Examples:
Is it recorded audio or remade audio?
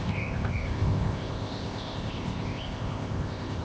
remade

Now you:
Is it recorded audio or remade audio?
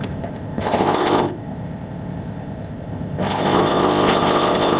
remade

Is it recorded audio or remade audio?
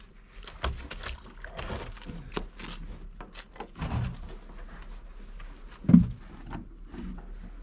recorded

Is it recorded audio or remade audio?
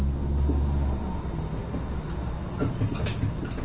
recorded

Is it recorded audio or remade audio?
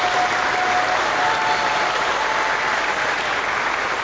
recorded